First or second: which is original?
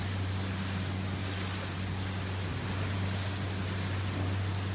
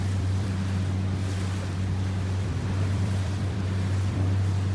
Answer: first